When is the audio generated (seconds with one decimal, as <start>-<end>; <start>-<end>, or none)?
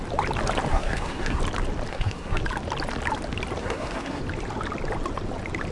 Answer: 0.7-1.4; 1.9-2.4; 3.6-4.2